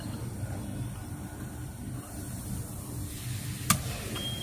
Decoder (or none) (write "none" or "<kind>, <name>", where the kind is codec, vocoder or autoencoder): none